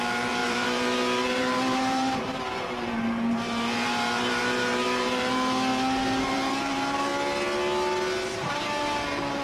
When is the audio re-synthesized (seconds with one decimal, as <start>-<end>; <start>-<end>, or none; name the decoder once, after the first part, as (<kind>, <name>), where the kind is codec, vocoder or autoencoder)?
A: 0.0-5.7 (vocoder, BigVGAN v2); 6.2-7.1; 8.3-9.4